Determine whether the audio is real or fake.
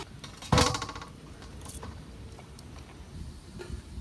real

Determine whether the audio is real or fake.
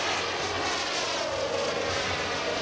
real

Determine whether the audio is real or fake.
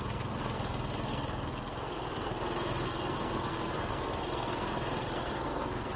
fake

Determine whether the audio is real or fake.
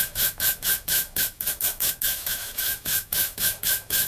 fake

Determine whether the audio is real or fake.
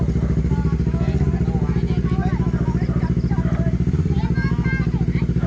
real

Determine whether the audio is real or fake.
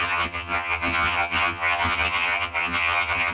fake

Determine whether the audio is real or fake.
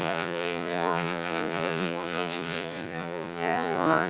fake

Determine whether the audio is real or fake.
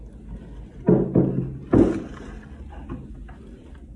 real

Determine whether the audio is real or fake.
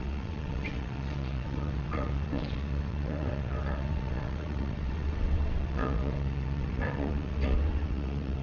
fake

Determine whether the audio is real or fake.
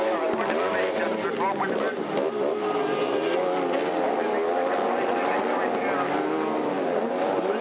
real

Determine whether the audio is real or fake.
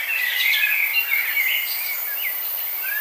fake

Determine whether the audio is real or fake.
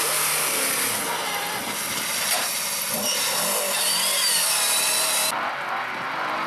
real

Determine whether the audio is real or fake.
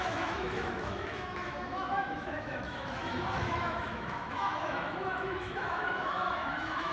fake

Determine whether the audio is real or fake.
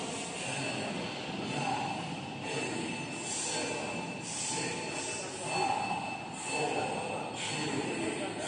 real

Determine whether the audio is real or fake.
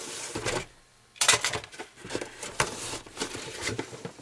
fake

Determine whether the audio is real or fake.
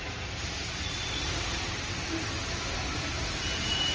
fake